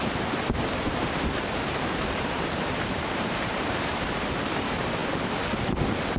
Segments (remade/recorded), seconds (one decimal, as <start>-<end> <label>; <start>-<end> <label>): 0.0-5.0 remade; 5.0-6.2 recorded